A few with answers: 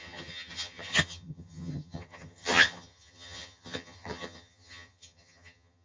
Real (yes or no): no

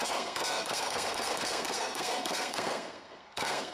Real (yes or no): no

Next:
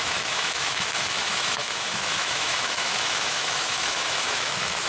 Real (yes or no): no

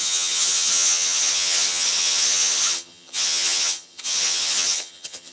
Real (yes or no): no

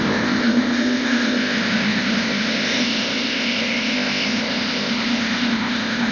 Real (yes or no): no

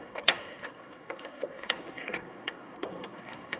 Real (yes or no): no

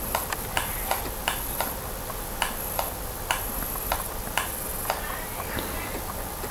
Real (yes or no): yes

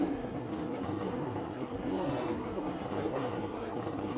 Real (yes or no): no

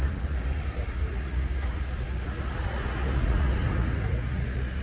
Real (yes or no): no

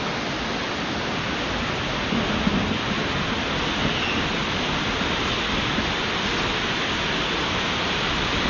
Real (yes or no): yes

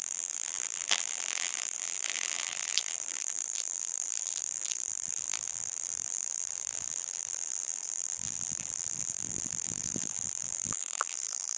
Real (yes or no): no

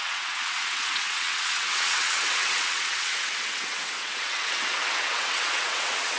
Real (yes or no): no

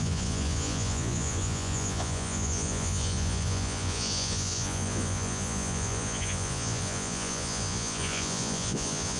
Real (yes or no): no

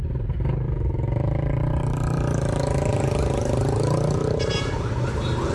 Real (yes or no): no